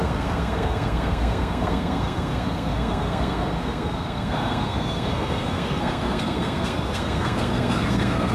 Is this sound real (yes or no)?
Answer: no